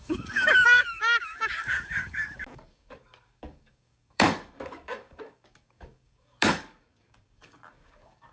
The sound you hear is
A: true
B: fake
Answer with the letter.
B